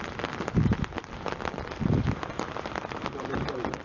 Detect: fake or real real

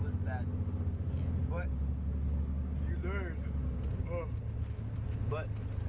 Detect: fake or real real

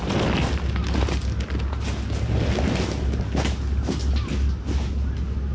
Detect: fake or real real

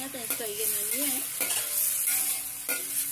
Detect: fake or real real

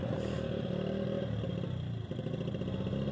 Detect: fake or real real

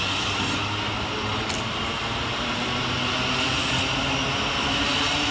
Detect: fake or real real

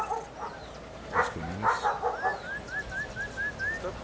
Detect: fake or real real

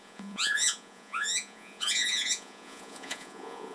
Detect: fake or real fake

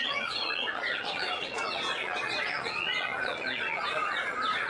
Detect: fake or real fake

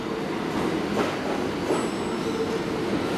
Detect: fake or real real